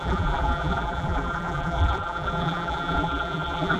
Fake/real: fake